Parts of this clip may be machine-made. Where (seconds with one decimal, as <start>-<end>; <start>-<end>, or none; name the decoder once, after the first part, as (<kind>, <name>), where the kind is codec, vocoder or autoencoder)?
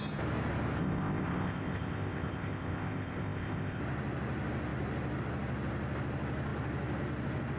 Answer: 0.8-3.8 (codec, ZipCodec)